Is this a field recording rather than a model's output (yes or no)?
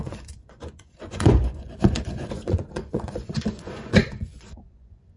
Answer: no